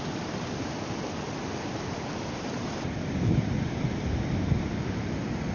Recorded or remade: recorded